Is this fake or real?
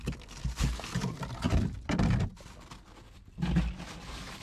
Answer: real